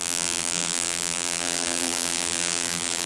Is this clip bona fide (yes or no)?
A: no